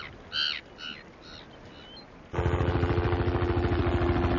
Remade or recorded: recorded